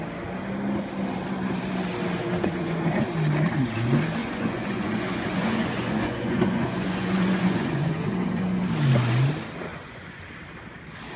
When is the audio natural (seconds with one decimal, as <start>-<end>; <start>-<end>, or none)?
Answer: 0.0-2.2; 2.9-4.2; 8.6-9.7; 10.2-11.2